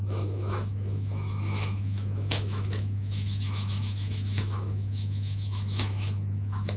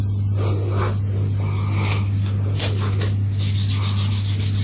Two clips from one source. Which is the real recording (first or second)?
second